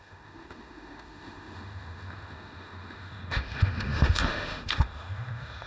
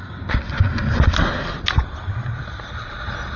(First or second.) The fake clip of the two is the first